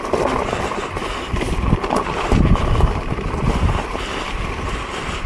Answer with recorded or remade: remade